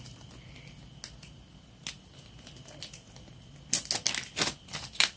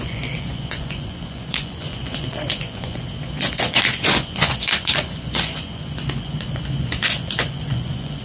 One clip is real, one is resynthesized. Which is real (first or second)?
first